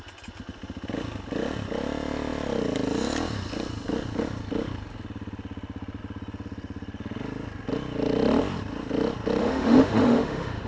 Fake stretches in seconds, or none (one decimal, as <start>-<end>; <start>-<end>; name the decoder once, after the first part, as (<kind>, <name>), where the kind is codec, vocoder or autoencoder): 9.4-10.7 (autoencoder, DAC-VAE)